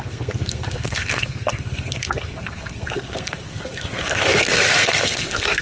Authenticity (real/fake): fake